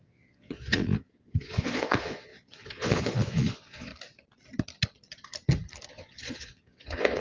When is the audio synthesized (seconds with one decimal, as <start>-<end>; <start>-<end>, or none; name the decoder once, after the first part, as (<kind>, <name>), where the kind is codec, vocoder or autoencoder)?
0.0-3.9 (vocoder, Vocos); 5.9-7.2